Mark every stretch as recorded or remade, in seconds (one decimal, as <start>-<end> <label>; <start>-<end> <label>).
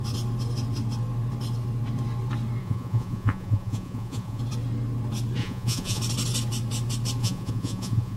0.0-2.6 recorded; 2.6-4.4 remade; 4.4-5.4 recorded; 5.4-6.0 remade; 6.0-7.2 recorded; 7.2-8.2 remade